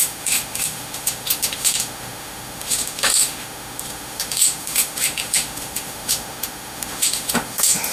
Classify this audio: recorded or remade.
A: remade